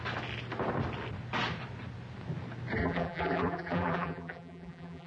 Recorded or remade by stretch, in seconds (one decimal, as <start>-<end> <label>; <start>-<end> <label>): 0.0-2.8 recorded; 2.8-5.1 remade